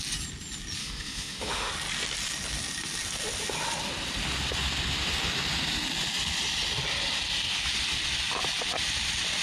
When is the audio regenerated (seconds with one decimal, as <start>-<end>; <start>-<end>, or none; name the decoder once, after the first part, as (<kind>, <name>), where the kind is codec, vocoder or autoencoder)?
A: 0.8-1.7 (autoencoder, DAC-VAE)

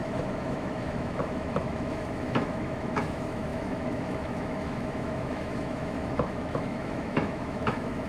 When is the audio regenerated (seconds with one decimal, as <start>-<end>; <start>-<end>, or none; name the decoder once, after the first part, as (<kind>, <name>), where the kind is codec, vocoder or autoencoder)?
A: 0.0-8.1 (autoencoder, DAC-VAE)

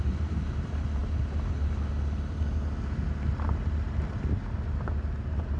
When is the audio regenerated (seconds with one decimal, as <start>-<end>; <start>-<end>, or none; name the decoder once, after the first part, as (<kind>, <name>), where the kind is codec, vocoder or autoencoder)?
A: none

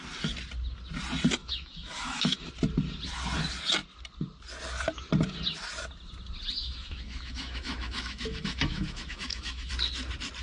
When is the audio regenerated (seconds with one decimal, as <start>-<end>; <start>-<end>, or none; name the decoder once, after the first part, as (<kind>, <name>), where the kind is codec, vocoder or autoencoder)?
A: 1.4-2.5 (autoencoder, DAC-VAE); 6.6-9.7

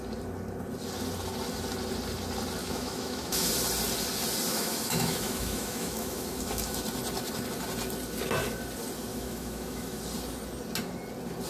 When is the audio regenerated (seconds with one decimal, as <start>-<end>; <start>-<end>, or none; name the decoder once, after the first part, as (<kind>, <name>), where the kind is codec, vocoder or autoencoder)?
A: 2.6-3.5 (autoencoder, DAC-VAE); 4.5-6.8; 9.1-10.0

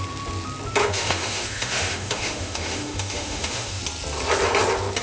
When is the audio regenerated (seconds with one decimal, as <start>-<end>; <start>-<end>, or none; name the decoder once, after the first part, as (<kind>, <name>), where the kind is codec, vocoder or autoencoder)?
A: 0.8-3.8 (autoencoder, DAC-VAE)

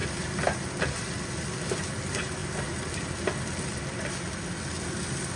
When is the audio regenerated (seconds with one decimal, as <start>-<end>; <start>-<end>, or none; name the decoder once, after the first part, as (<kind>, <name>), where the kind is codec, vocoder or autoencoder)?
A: none

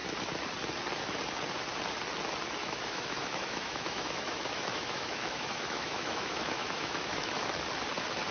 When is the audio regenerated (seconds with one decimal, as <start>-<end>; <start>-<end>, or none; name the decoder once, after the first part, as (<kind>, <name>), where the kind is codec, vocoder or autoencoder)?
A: 2.6-7.4 (autoencoder, DAC-VAE)